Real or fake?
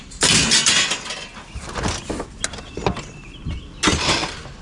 real